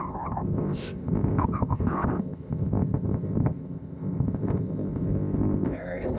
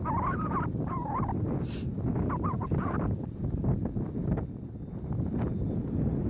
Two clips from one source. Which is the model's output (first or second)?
first